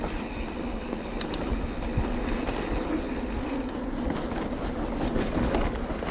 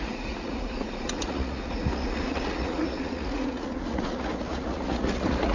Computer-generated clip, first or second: second